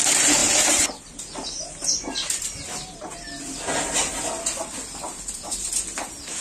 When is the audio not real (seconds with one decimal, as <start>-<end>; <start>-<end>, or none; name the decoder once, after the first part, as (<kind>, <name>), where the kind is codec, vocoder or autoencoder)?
none